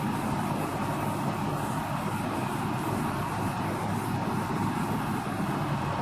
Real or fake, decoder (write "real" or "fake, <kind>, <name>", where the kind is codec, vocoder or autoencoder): real